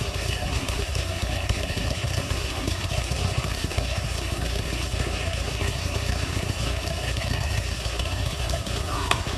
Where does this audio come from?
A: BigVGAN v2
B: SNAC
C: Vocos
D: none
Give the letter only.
B